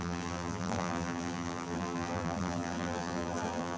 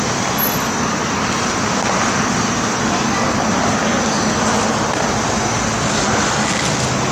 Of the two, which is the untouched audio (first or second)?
second